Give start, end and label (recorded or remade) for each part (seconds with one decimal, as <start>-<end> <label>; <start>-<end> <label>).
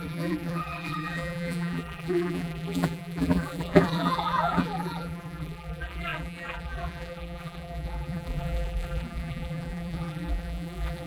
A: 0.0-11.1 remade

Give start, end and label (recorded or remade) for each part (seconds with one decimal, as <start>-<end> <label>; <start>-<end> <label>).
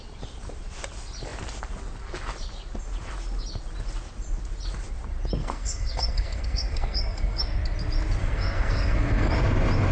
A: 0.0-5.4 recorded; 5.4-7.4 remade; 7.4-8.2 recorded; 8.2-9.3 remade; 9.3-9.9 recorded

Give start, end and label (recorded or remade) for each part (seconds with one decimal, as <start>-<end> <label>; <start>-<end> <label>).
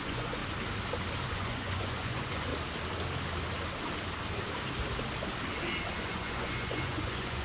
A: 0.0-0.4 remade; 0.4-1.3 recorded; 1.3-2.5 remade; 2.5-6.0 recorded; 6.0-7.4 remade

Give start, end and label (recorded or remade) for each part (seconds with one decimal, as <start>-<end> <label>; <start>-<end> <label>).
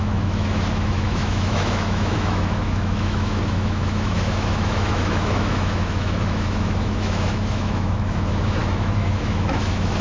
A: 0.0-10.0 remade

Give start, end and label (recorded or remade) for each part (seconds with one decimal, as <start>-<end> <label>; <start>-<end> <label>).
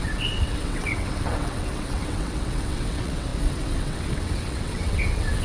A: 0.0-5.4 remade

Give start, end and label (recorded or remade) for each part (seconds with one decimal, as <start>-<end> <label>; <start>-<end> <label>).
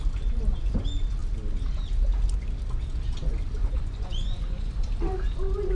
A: 0.0-3.6 recorded; 3.6-4.7 remade; 4.7-5.7 recorded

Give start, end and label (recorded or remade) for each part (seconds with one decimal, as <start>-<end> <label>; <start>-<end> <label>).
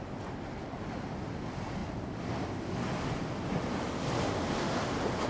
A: 0.0-1.8 recorded; 1.8-2.5 remade; 2.5-5.3 recorded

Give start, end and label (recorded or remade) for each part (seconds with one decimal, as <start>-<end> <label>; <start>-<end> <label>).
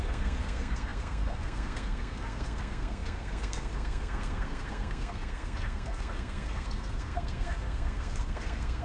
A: 0.0-8.8 remade